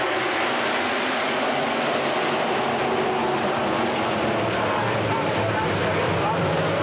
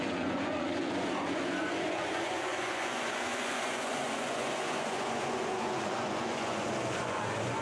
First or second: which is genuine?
first